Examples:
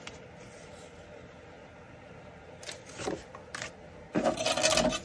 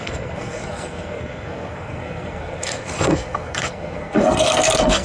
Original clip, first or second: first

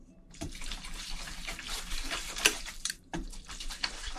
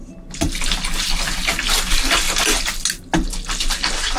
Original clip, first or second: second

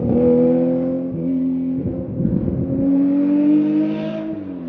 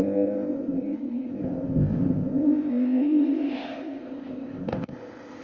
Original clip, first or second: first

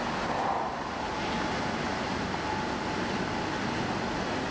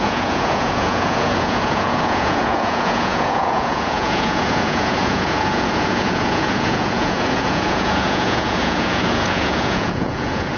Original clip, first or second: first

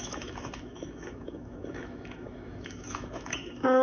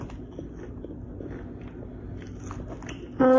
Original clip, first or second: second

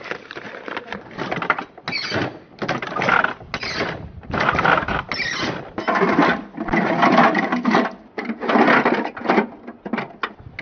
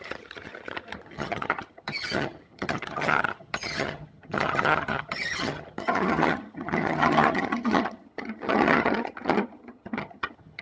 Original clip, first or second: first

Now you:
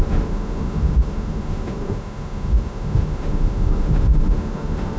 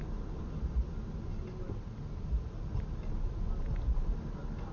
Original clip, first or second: second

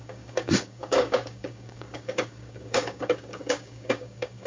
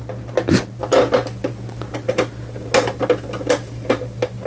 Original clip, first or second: second